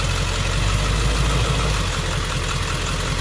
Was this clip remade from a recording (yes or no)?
no